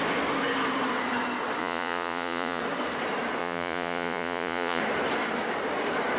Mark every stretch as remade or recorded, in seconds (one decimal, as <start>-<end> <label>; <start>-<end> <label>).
0.0-1.6 recorded; 1.6-2.6 remade; 2.6-3.4 recorded; 3.4-4.8 remade; 4.8-6.2 recorded